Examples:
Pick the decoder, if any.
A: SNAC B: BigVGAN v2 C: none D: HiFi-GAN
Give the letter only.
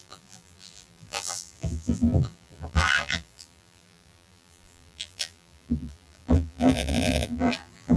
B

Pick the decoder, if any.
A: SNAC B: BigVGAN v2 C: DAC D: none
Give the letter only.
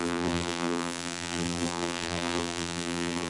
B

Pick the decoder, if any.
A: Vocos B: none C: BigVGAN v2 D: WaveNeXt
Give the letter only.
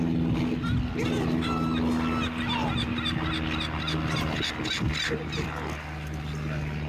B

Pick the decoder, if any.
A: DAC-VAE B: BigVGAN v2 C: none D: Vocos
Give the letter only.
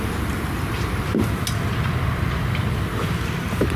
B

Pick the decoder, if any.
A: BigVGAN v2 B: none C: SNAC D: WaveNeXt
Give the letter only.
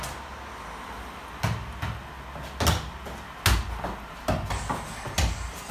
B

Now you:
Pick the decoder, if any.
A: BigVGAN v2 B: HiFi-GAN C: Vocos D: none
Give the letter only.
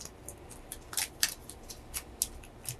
D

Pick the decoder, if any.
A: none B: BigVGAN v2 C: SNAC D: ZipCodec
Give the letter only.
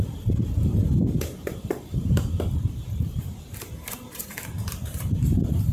B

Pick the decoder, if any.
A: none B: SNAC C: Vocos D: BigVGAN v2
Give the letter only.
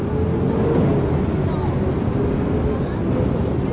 A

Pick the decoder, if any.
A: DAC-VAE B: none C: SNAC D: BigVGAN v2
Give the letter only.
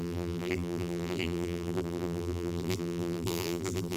D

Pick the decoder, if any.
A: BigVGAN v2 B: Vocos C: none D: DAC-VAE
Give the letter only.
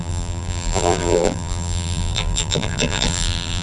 A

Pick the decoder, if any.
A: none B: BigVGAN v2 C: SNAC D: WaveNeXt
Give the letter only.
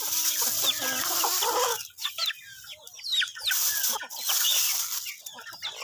A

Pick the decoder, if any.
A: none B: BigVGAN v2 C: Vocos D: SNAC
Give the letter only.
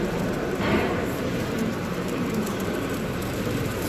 B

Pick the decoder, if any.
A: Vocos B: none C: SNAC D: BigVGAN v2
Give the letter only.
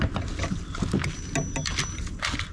B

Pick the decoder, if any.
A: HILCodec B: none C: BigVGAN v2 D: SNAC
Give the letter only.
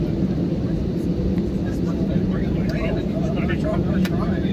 B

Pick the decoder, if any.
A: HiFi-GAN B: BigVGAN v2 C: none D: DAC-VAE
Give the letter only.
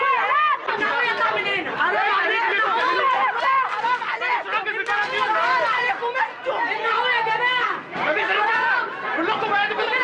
C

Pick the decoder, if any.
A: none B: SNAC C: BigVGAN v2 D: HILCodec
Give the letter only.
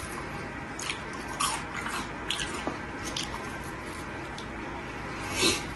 A